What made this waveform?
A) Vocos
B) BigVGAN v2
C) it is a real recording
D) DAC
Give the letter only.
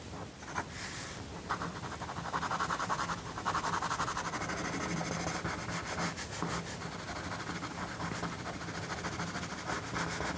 C